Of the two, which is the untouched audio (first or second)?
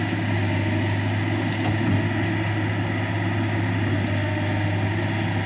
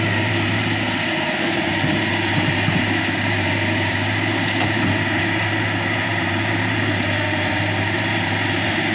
first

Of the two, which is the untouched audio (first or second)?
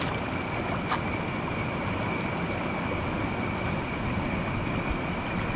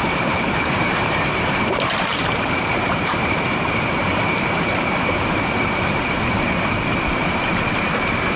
first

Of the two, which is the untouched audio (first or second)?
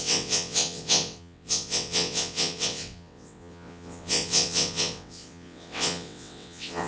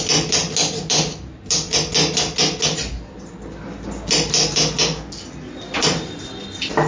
second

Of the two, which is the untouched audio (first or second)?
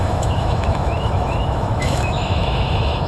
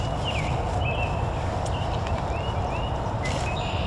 second